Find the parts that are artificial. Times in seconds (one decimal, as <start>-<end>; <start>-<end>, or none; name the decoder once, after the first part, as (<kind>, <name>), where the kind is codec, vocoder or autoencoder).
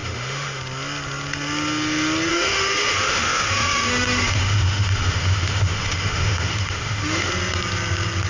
0.0-0.6 (autoencoder, DAC-VAE); 2.3-7.3